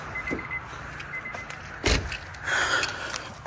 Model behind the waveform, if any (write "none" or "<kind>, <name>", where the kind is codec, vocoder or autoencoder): none